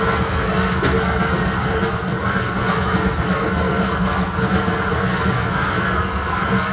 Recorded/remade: remade